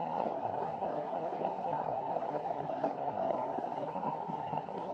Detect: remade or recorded remade